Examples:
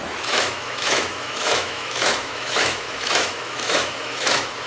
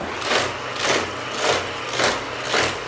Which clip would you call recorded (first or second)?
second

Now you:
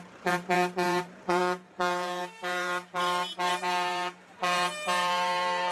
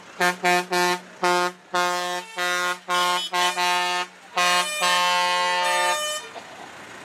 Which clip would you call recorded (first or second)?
second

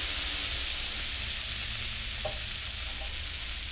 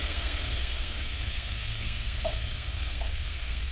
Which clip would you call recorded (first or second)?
first